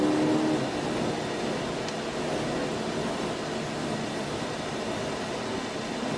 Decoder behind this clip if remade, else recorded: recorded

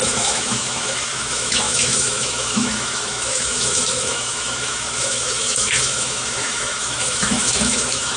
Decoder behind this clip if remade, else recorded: remade, autoencoder, DAC-VAE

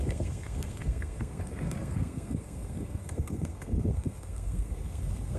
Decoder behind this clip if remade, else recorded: remade, codec, SNAC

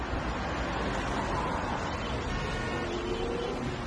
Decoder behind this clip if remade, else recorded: recorded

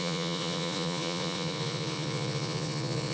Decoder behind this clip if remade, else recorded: remade, vocoder, Vocos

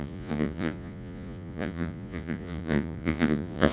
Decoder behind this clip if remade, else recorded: remade, vocoder, Vocos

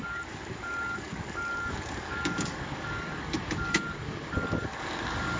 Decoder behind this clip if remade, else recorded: remade, codec, DAC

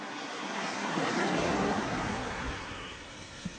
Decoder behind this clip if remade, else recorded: remade, codec, SNAC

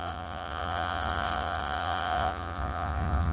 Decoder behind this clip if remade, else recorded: remade, vocoder, Vocos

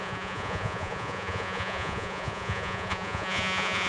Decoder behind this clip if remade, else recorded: remade, vocoder, Vocos